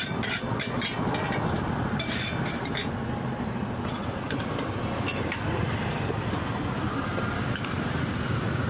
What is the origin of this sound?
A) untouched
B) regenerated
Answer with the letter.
B